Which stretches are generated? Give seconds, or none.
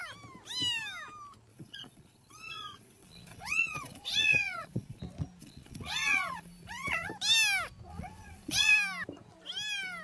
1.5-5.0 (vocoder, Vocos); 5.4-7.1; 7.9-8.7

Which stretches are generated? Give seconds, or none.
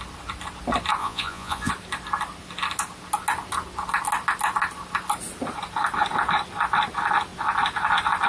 1.0-1.7 (vocoder, Vocos)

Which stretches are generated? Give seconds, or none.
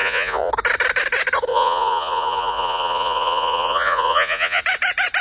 0.0-0.5 (vocoder, Vocos); 1.5-4.6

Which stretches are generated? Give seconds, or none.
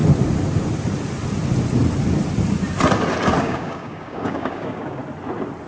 3.4-5.0 (codec, DAC)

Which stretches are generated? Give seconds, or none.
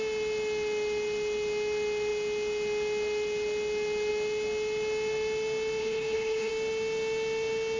5.8-6.5 (codec, HILCodec)